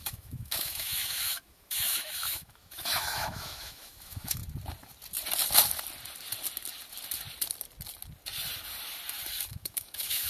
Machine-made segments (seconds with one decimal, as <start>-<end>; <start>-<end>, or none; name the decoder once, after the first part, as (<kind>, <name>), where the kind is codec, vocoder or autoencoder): 0.0-4.4 (autoencoder, DAC-VAE); 9.5-10.3

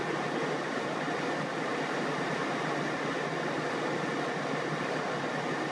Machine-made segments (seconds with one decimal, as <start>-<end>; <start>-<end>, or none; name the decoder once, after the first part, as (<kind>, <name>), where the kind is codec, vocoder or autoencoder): none

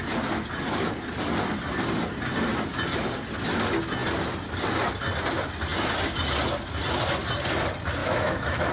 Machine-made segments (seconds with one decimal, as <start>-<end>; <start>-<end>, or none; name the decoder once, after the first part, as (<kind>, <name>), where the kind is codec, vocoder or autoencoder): 8.0-8.7 (autoencoder, DAC-VAE)

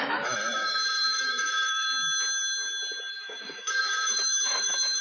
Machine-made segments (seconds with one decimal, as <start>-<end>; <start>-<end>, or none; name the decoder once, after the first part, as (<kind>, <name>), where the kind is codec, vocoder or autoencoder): 0.0-1.9 (autoencoder, DAC-VAE); 3.1-5.0

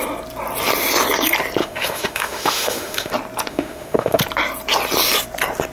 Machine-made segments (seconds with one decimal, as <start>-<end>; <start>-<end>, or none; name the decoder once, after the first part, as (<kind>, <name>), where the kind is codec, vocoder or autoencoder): 1.6-3.1 (autoencoder, DAC-VAE); 3.5-4.2

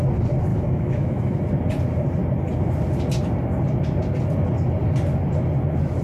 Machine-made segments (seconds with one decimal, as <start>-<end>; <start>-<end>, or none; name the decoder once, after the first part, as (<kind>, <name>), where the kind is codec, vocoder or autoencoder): 0.5-1.4 (autoencoder, DAC-VAE)

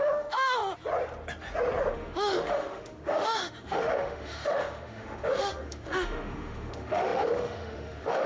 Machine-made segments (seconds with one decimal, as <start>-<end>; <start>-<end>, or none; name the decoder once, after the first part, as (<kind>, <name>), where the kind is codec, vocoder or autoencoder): 0.0-0.6 (autoencoder, DAC-VAE); 1.9-8.3